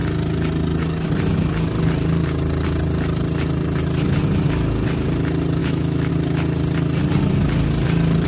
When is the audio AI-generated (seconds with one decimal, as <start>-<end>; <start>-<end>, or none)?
5.6-6.1